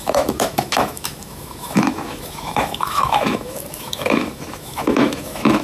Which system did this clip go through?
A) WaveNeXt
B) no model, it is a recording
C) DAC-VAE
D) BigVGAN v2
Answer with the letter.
C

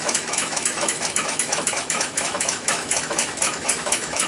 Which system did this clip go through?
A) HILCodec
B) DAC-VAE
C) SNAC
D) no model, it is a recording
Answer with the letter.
B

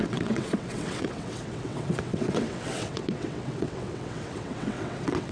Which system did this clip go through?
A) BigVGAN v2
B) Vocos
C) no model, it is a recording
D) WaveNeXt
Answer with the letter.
D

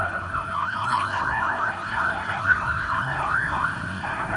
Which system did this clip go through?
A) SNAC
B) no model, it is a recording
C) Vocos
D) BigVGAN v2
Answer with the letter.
A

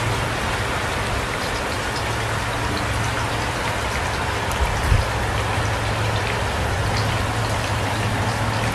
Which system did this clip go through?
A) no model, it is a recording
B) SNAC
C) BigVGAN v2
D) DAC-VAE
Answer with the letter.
A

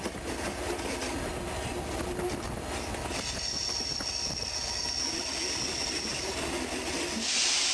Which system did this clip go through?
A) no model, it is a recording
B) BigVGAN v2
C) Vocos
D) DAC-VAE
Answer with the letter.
A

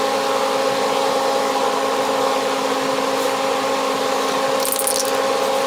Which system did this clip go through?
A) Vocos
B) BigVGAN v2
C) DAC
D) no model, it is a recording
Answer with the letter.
D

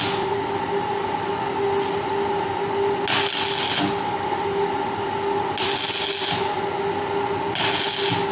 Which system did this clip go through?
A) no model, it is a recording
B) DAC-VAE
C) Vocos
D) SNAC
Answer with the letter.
A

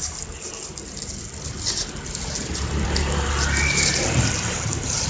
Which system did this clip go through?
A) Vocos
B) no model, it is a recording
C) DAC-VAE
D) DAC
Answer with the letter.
B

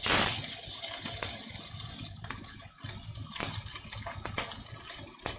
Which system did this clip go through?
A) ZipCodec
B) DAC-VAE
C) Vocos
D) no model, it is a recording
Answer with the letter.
D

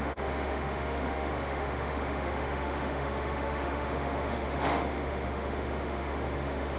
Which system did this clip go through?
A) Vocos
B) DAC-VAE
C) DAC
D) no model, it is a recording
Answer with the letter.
B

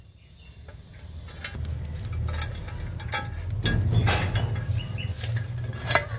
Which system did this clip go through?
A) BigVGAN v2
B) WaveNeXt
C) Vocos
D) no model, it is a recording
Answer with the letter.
D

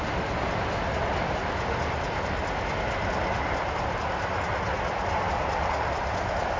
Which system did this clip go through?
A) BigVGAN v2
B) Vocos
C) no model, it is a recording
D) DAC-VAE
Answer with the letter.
C